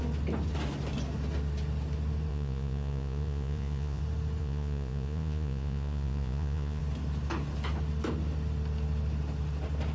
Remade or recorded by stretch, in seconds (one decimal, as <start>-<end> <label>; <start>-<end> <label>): 0.0-2.3 recorded; 2.3-4.0 remade; 4.0-4.4 recorded; 4.4-6.8 remade; 6.8-9.9 recorded